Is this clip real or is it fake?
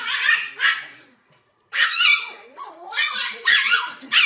fake